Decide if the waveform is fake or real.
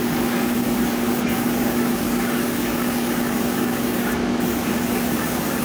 fake